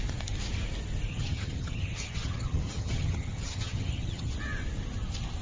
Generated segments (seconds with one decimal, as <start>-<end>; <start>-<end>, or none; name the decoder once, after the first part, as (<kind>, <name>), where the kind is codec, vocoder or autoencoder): 1.1-4.3 (vocoder, HiFi-GAN)